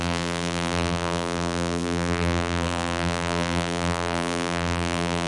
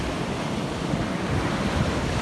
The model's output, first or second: first